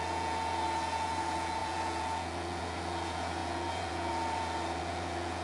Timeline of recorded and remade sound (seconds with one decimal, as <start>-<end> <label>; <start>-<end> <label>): 0.0-5.4 remade